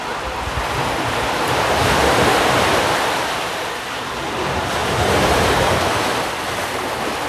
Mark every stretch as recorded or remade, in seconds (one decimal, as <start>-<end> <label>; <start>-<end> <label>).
0.0-4.8 recorded; 4.8-5.9 remade; 5.9-7.3 recorded